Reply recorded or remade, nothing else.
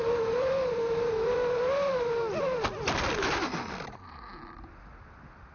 remade